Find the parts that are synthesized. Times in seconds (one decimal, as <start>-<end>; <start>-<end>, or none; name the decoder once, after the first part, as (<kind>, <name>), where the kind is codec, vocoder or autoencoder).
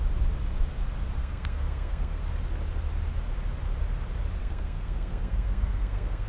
1.2-2.2 (codec, SNAC); 4.4-6.3